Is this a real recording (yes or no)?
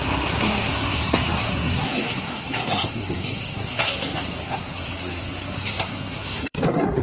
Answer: no